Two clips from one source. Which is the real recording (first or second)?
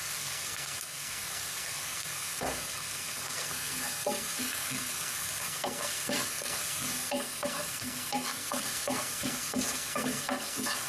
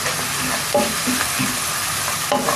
second